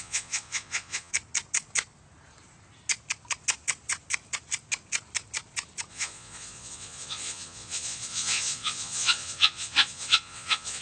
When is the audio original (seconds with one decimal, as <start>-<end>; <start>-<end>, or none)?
1.1-5.9